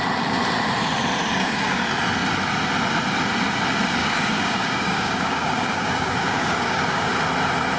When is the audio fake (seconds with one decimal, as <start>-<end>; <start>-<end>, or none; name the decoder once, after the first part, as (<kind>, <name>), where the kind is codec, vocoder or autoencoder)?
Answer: 1.3-1.8 (codec, DAC); 4.0-7.1